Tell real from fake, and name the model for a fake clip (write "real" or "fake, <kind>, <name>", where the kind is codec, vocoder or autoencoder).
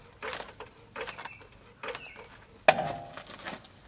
real